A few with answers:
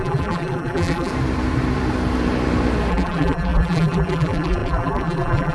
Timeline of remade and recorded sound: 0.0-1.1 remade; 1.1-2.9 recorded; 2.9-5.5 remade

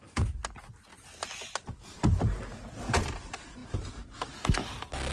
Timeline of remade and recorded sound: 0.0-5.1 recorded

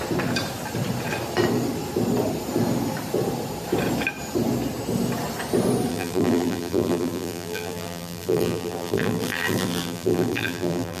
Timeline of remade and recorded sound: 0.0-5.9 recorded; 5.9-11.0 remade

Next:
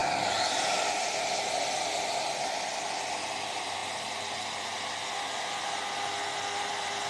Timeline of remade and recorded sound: 0.0-1.0 remade; 1.0-7.1 recorded

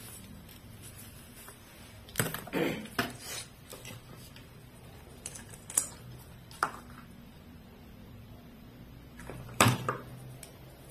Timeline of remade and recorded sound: 0.0-2.1 remade; 2.1-3.2 recorded; 3.2-10.1 remade; 10.1-10.9 recorded

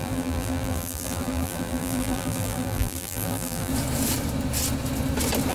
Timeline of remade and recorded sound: 0.0-3.7 remade; 3.7-5.5 recorded

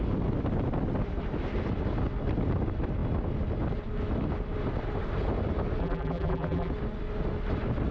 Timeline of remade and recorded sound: 0.0-5.8 recorded; 5.8-6.7 remade; 6.7-7.9 recorded

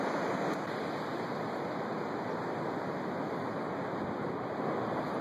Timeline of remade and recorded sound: 0.0-5.2 recorded